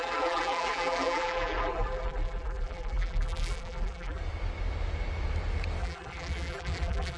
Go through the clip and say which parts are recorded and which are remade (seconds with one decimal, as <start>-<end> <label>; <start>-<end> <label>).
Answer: 0.0-4.2 remade; 4.2-5.8 recorded; 5.8-7.2 remade